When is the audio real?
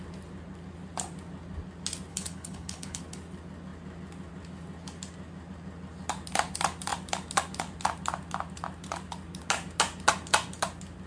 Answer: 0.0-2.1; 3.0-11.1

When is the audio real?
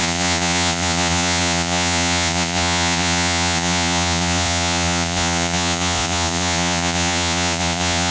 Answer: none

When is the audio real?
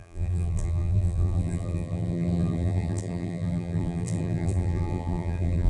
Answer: none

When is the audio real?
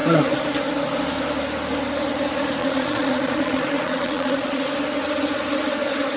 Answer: 0.0-2.6; 4.7-6.2